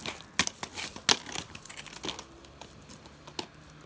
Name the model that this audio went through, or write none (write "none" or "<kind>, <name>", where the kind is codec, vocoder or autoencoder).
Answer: none